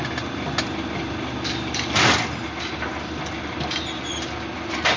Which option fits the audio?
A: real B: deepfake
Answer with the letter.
A